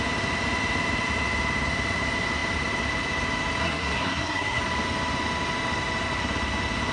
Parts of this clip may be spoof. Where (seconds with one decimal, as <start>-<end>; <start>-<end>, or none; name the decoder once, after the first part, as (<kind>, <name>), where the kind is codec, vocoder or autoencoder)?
3.6-4.6 (codec, SNAC)